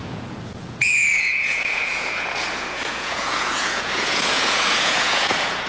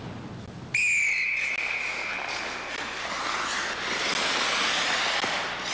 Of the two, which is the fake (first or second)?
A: first